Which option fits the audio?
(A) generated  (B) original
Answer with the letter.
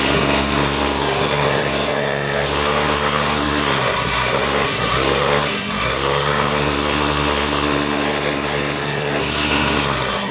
A